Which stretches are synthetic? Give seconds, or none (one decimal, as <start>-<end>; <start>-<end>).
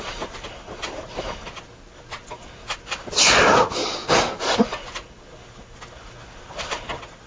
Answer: none